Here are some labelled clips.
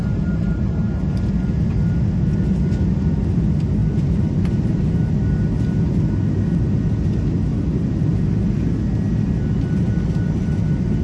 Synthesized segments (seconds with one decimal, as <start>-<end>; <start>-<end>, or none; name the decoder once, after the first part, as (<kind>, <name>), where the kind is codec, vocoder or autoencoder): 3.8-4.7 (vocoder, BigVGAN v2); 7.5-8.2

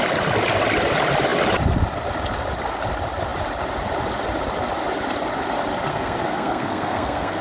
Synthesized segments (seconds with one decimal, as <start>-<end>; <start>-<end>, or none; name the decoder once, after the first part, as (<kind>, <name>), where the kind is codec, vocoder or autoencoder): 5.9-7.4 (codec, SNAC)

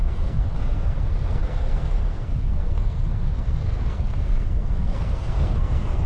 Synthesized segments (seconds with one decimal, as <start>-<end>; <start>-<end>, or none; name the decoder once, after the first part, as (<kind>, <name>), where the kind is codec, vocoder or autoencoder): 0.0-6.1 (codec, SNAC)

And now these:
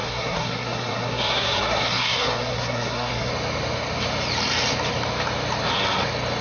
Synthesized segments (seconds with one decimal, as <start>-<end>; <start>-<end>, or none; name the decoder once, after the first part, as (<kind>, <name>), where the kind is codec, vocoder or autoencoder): 0.0-3.3 (codec, SNAC)

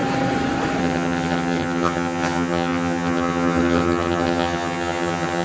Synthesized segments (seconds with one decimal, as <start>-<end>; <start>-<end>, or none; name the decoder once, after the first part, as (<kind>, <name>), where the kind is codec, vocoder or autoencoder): 0.8-5.4 (vocoder, HiFi-GAN)

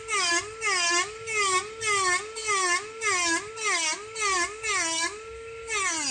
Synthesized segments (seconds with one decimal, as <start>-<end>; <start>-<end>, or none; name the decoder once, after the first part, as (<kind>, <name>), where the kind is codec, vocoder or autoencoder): none